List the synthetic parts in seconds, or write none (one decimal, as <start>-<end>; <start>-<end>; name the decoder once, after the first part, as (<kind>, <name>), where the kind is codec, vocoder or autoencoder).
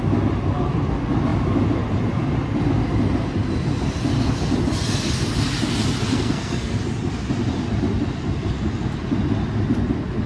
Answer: 6.1-6.8 (codec, SNAC)